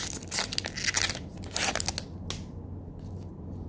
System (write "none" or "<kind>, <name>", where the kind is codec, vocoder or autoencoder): none